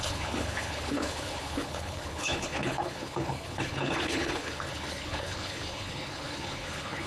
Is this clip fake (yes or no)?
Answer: yes